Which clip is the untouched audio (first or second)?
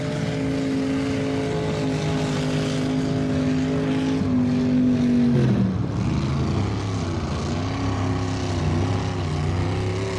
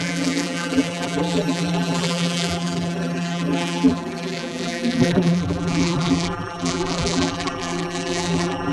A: first